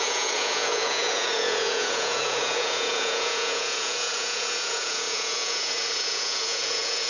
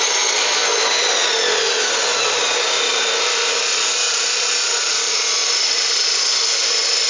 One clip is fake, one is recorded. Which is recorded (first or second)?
second